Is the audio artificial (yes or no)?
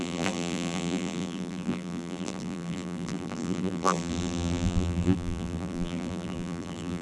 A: yes